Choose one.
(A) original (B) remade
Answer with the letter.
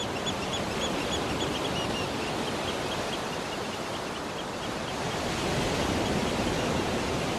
A